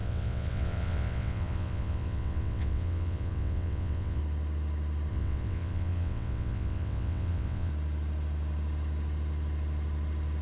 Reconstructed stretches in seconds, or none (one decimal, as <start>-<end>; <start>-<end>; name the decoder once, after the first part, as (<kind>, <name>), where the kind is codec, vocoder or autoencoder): 0.0-4.2 (vocoder, WaveNeXt); 5.1-7.7